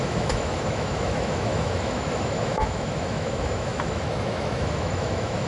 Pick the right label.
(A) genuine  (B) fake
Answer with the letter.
B